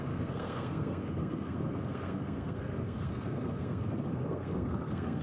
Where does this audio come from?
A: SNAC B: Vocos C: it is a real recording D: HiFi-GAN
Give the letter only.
A